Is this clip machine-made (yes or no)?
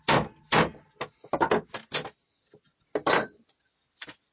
no